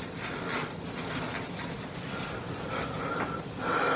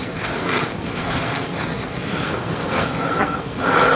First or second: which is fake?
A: second